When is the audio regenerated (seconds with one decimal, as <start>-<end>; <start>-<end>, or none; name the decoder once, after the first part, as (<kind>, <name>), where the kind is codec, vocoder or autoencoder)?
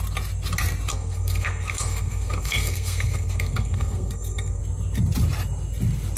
0.9-4.6 (codec, SNAC)